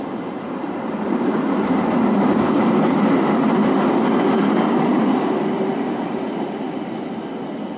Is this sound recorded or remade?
recorded